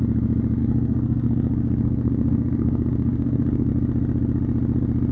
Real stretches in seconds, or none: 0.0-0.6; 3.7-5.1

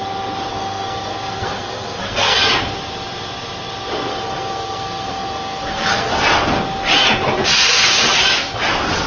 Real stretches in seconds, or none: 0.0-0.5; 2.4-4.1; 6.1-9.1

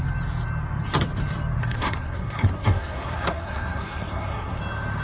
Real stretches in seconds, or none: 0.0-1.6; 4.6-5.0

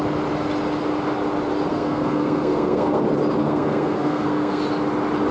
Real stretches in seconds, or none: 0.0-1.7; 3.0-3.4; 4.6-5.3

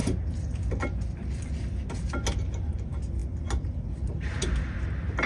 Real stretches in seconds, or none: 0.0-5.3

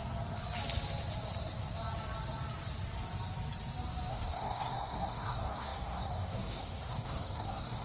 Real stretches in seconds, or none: 0.0-4.1

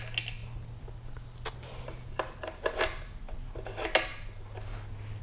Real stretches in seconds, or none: 0.0-5.2

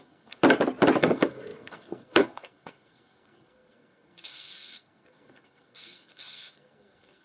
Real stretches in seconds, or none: 0.4-1.0